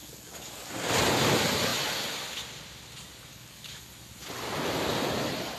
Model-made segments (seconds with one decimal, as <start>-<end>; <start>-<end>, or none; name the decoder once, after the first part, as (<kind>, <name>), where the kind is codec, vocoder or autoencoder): 0.0-0.7 (codec, DAC); 3.3-3.9